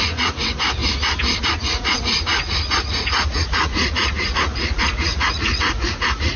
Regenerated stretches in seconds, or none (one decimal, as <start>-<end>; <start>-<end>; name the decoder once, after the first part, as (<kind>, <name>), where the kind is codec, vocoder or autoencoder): 0.0-0.8 (vocoder, Vocos); 1.4-6.4